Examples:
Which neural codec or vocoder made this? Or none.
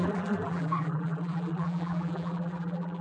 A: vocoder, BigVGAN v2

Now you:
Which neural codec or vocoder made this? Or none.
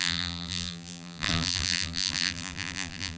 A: vocoder, BigVGAN v2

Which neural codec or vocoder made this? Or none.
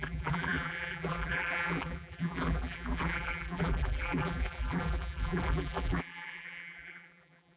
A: vocoder, BigVGAN v2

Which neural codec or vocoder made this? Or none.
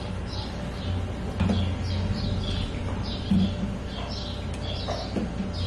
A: none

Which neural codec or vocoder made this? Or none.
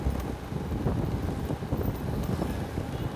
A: none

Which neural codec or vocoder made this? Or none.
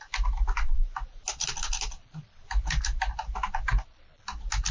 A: none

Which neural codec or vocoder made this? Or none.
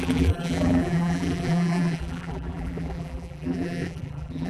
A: vocoder, BigVGAN v2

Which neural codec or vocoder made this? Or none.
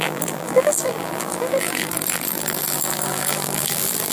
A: vocoder, BigVGAN v2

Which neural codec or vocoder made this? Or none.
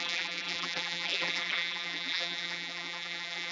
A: vocoder, BigVGAN v2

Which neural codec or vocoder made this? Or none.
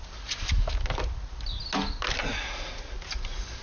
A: none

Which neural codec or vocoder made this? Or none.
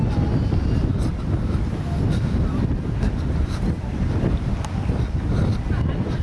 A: none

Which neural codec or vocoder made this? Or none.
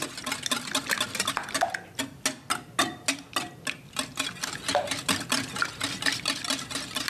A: none